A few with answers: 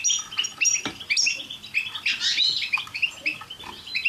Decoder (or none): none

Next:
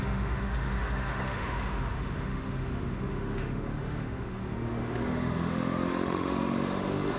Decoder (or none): autoencoder, DAC-VAE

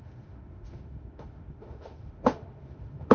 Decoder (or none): autoencoder, DAC-VAE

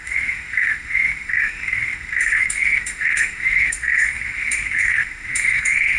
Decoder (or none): autoencoder, DAC-VAE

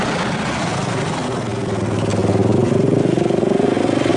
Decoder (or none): none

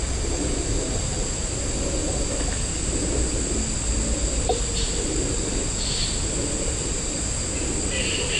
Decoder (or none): none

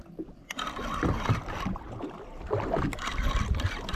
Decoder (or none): none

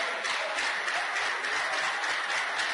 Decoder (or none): none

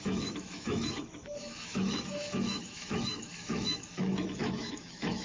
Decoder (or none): autoencoder, DAC-VAE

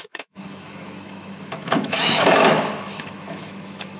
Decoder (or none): autoencoder, DAC-VAE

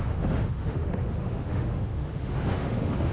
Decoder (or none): autoencoder, DAC-VAE